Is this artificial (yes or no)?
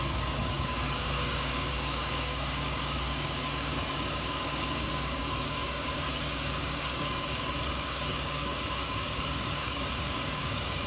yes